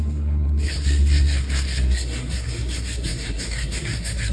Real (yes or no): no